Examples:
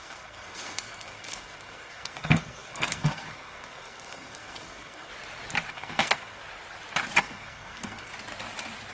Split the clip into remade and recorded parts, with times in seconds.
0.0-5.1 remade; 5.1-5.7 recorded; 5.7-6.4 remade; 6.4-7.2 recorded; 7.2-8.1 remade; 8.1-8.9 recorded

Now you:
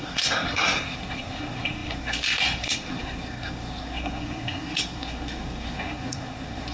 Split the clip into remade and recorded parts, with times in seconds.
0.0-6.7 remade